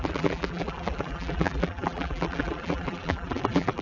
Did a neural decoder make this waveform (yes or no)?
yes